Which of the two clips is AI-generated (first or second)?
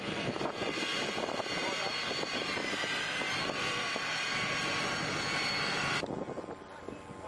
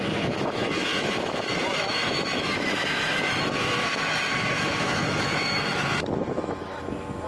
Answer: second